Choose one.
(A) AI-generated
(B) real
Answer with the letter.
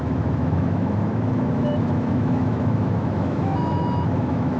A